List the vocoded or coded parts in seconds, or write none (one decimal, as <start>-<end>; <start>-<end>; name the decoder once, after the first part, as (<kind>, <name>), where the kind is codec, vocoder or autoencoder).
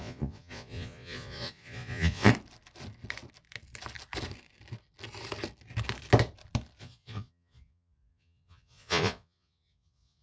0.0-2.3 (vocoder, Vocos); 6.8-10.2